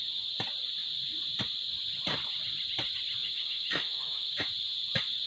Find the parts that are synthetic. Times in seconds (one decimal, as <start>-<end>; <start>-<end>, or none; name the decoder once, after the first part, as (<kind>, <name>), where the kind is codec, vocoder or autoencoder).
3.2-4.3 (autoencoder, DAC-VAE)